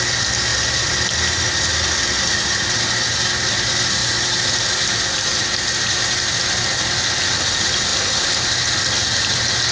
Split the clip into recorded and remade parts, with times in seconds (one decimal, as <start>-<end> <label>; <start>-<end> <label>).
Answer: 0.0-9.7 recorded